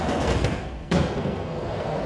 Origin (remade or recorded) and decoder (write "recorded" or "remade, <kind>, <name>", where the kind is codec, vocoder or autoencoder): remade, codec, SNAC